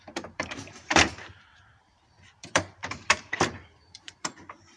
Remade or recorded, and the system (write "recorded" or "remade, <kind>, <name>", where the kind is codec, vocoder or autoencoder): remade, vocoder, BigVGAN v2